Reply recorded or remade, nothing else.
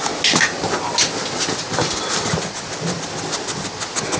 recorded